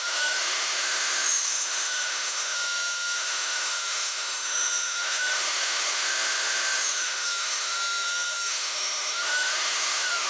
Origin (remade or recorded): remade